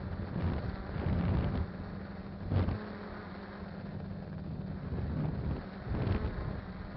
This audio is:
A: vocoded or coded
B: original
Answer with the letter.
B